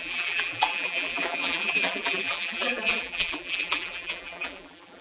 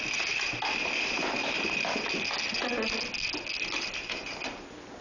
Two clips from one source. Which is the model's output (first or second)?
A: first